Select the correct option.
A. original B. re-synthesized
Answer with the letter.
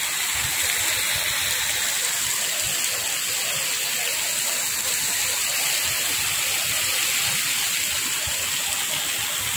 A